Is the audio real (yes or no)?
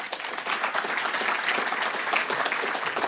yes